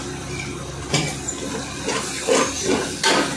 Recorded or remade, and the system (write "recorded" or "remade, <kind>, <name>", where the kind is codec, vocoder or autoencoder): recorded